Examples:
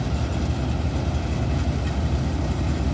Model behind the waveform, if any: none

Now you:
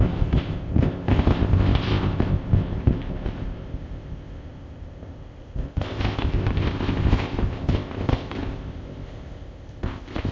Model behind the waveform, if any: codec, ZipCodec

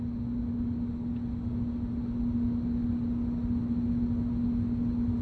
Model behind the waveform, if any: none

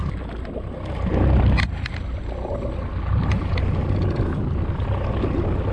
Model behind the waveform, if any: none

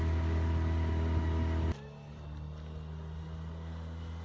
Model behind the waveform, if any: none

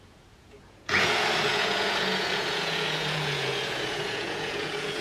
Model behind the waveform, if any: vocoder, Vocos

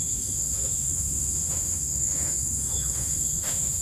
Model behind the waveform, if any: autoencoder, DAC-VAE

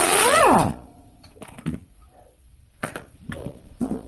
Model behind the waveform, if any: vocoder, Vocos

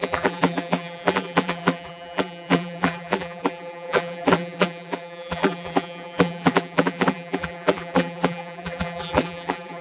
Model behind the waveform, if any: vocoder, BigVGAN v2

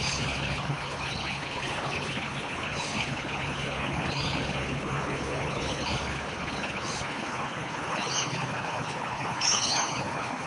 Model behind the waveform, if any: codec, HILCodec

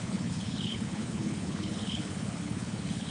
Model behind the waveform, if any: codec, HILCodec